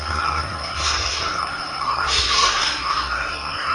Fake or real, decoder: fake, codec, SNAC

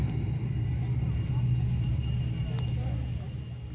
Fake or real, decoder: real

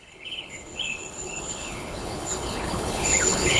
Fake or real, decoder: fake, codec, HILCodec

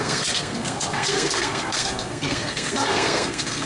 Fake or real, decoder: fake, codec, SNAC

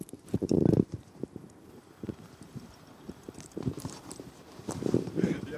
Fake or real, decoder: fake, vocoder, BigVGAN v2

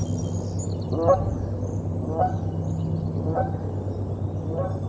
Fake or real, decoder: real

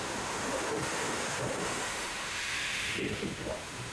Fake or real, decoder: fake, autoencoder, DAC-VAE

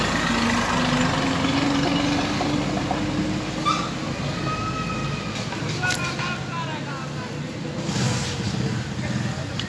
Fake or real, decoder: real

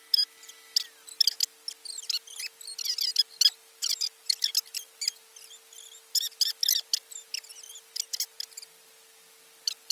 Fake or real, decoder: real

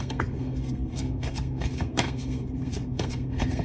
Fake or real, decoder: fake, codec, SNAC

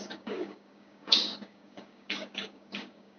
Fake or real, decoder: fake, codec, DAC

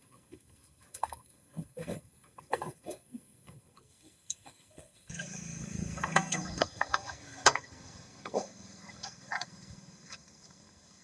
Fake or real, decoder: fake, codec, SNAC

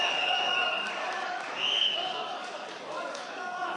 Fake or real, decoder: fake, codec, DAC